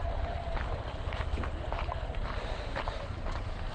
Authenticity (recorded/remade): recorded